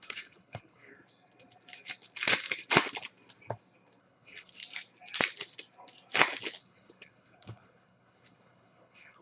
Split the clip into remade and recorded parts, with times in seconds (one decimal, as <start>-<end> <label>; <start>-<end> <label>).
0.0-0.9 remade; 0.9-4.0 recorded; 4.0-4.6 remade; 4.6-6.6 recorded; 6.6-9.2 remade